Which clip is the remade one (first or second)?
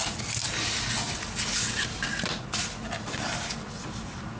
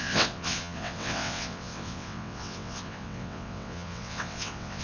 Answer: second